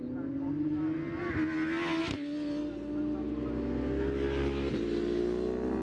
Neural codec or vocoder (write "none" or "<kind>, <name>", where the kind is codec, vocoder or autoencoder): none